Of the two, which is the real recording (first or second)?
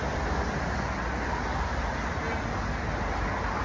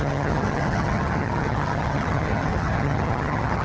first